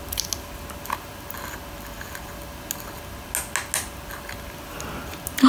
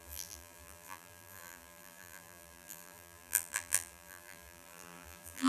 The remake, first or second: second